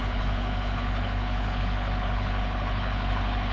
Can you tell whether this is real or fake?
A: fake